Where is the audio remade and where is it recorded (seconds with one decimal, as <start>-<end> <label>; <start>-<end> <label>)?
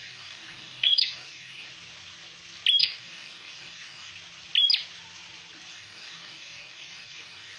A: 0.0-1.7 remade; 1.7-2.8 recorded; 2.8-4.1 remade; 4.1-5.7 recorded; 5.7-7.6 remade